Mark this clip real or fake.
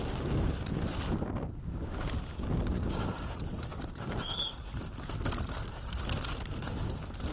real